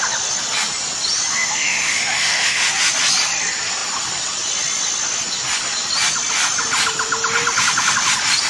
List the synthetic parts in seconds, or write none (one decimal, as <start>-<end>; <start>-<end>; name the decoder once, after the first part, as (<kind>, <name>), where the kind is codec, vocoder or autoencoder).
1.3-2.7 (autoencoder, DAC-VAE)